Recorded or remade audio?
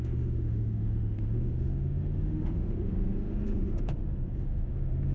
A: remade